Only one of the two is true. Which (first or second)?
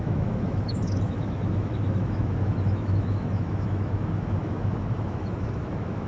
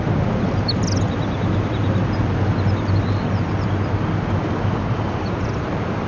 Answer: second